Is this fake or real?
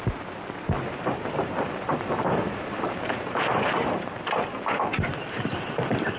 fake